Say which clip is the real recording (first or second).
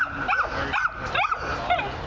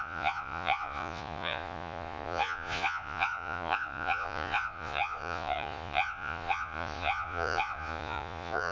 first